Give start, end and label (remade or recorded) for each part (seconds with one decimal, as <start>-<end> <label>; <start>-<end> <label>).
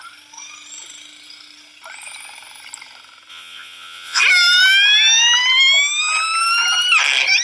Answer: 0.0-3.3 recorded; 3.3-4.2 remade; 4.2-7.4 recorded